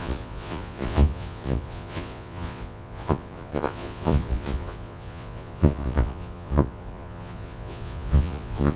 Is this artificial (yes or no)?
yes